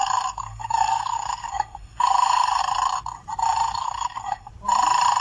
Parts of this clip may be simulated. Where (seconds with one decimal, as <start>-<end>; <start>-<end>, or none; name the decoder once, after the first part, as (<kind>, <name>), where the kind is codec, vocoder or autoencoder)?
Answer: 0.0-2.6 (codec, SNAC); 3.8-4.5